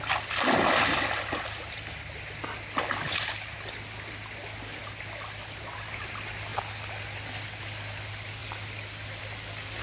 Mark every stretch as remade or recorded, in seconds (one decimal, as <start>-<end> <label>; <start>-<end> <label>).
0.0-9.8 recorded